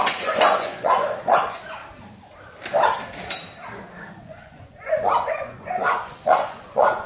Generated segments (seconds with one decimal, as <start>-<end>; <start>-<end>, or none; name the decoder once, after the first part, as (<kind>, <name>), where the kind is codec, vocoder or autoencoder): 0.0-1.8 (vocoder, Vocos); 4.1-7.1